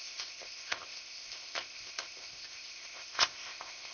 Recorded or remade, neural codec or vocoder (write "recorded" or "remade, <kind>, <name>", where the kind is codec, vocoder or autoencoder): remade, codec, ZipCodec